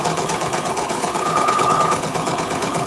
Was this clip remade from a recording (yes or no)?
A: yes